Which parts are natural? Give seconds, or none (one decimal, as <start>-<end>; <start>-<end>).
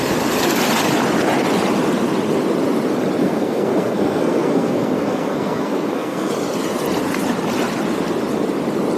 0.0-3.2; 6.3-9.0